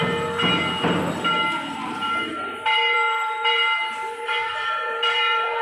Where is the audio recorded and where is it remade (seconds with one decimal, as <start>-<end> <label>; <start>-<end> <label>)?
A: 0.0-1.8 recorded; 1.8-5.6 remade